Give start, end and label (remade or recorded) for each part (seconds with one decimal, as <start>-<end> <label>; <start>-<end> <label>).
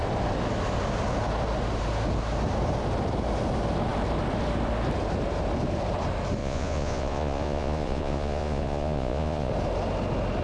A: 0.0-6.4 recorded; 6.4-9.5 remade; 9.5-10.4 recorded